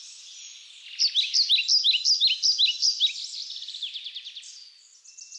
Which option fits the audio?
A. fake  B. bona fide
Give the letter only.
B